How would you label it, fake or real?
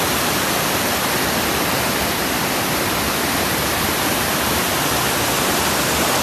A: real